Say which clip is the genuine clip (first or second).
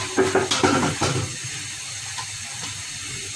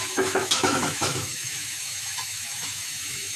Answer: first